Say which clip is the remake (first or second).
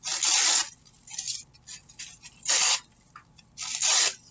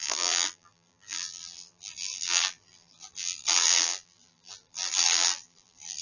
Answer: second